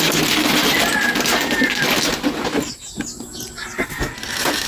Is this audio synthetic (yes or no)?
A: no